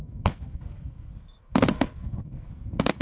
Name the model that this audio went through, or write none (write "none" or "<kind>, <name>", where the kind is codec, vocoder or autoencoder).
codec, SNAC